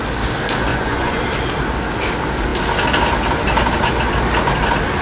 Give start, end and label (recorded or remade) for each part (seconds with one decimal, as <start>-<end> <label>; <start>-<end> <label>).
0.0-0.7 recorded; 0.7-1.2 remade; 1.2-5.0 recorded